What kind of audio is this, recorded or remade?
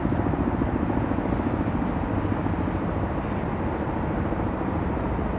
recorded